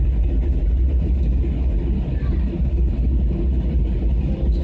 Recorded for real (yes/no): yes